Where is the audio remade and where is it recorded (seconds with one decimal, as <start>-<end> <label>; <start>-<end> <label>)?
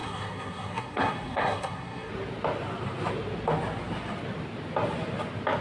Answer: 0.0-2.1 remade; 2.1-5.6 recorded